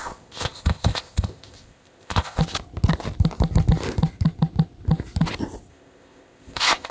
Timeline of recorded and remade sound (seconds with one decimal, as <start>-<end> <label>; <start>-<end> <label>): 0.0-2.4 remade; 2.4-5.7 recorded; 5.7-6.9 remade